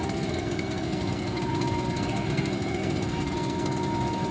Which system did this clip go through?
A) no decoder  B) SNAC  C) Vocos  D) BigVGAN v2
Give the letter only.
B